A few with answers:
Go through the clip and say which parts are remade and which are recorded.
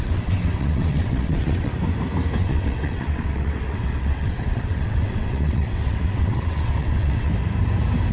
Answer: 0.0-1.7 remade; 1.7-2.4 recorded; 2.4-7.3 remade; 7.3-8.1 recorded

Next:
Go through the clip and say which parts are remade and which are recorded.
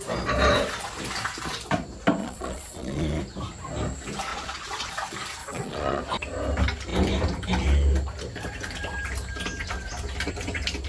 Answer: 0.0-2.2 recorded; 2.2-3.2 remade; 3.2-4.3 recorded; 4.3-4.9 remade; 4.9-5.4 recorded; 5.4-6.0 remade; 6.0-10.9 recorded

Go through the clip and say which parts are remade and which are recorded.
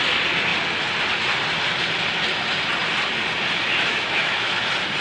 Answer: 0.0-3.9 recorded; 3.9-4.6 remade; 4.6-5.0 recorded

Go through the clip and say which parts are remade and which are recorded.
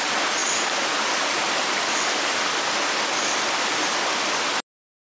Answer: 0.0-5.0 recorded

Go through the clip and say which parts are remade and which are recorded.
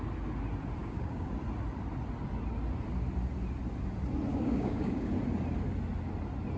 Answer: 0.0-0.8 recorded; 0.8-1.3 remade; 1.3-4.3 recorded; 4.3-5.1 remade; 5.1-6.6 recorded